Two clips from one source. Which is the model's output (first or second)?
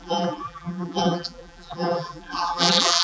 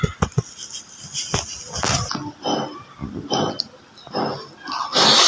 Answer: first